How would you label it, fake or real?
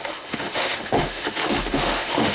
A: fake